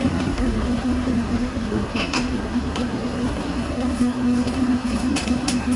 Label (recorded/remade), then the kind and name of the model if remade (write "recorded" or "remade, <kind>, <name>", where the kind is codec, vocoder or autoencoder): remade, codec, SNAC